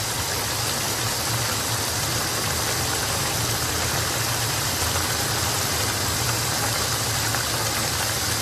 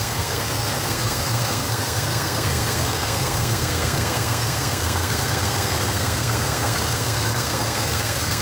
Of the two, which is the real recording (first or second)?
first